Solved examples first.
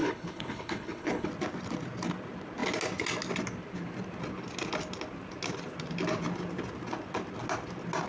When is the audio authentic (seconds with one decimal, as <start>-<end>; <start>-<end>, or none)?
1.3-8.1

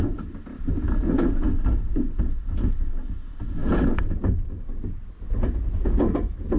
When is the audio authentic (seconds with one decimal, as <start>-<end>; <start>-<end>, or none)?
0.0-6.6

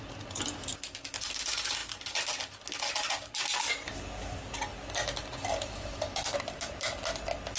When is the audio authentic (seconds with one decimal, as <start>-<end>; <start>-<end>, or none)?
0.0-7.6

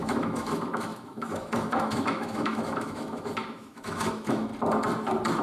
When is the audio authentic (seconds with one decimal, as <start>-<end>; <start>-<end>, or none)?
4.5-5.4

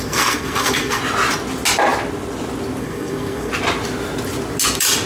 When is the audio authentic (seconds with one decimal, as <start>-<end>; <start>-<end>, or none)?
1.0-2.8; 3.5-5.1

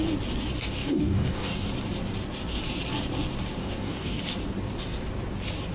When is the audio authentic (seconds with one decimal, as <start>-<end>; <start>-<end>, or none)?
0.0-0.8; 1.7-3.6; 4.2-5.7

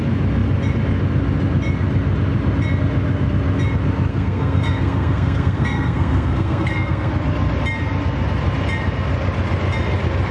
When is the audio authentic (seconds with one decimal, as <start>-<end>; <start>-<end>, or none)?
0.0-4.1; 7.1-10.3

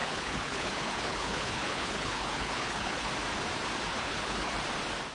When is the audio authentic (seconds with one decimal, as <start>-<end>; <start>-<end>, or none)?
3.1-3.9; 4.5-5.1